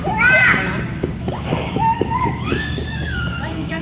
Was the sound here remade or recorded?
remade